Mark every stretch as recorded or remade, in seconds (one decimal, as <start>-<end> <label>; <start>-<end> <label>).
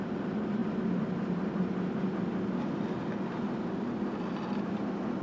0.0-5.2 recorded